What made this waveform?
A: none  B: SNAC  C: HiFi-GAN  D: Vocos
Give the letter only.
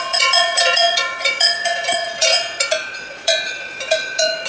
D